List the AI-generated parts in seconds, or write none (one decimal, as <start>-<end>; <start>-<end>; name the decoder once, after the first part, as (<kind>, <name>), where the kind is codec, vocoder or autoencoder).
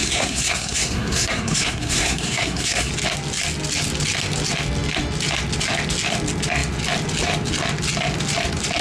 0.0-2.9 (codec, SNAC)